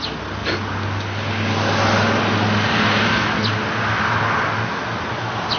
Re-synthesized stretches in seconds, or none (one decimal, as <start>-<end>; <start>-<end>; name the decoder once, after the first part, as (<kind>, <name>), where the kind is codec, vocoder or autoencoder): none